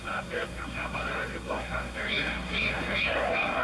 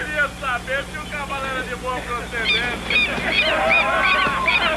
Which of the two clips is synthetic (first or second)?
first